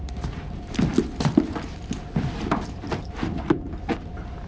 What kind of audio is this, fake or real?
real